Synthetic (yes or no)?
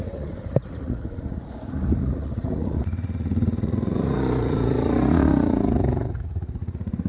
yes